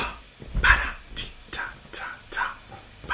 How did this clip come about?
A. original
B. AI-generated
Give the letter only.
A